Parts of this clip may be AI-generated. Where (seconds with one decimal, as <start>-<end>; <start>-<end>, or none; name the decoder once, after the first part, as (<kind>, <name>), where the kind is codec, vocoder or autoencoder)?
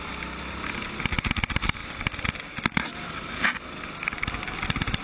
none